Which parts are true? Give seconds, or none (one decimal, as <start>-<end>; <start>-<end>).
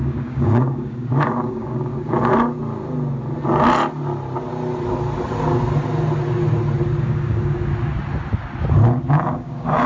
1.9-7.0; 7.7-9.3